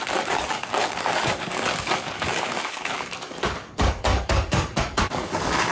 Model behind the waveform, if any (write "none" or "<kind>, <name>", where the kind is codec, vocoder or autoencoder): codec, DAC